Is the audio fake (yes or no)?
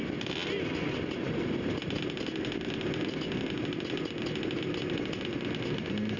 no